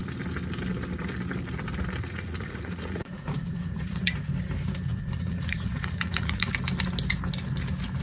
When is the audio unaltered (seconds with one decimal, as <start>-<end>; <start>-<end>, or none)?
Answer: 0.0-2.0; 4.3-4.9; 6.5-8.0